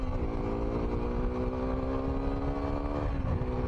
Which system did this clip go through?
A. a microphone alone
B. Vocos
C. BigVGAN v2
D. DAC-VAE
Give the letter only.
A